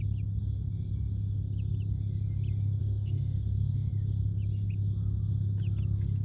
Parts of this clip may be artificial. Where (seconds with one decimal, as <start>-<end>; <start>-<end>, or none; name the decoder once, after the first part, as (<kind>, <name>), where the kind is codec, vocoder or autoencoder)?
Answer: 2.8-3.9 (codec, SNAC)